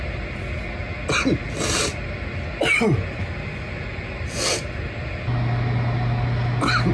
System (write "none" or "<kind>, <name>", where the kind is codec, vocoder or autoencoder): none